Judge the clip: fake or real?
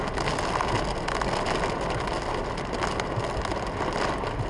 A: real